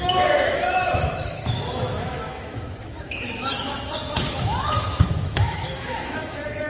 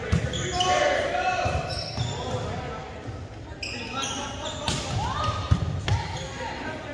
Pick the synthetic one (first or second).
first